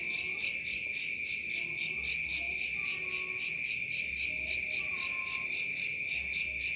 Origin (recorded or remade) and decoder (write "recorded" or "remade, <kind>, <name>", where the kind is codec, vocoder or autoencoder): recorded